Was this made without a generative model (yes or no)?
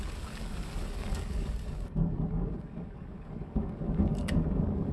no